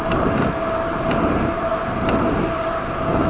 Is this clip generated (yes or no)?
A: no